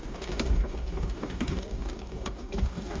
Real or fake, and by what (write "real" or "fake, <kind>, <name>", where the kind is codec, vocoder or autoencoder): fake, codec, DAC